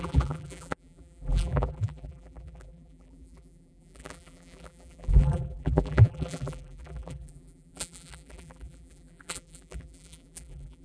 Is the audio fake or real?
fake